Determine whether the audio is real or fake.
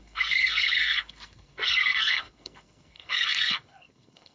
fake